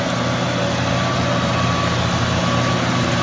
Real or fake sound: real